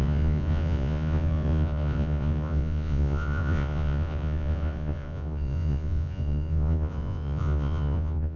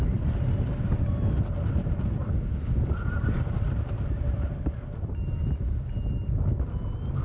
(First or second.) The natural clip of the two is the second